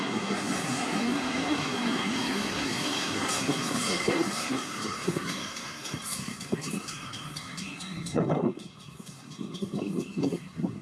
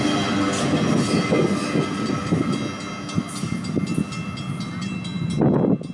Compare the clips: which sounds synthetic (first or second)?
first